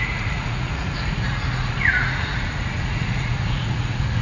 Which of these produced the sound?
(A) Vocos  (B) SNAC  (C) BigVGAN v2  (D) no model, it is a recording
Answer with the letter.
A